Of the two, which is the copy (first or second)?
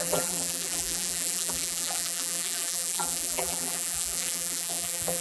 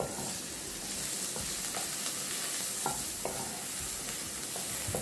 first